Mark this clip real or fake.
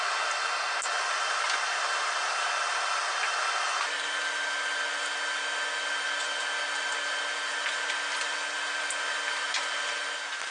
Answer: real